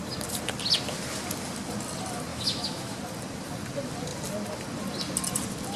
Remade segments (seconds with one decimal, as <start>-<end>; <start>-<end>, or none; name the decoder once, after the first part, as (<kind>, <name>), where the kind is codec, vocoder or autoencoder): 2.3-3.0 (autoencoder, DAC-VAE)